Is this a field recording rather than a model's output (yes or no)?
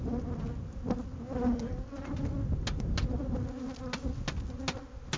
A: yes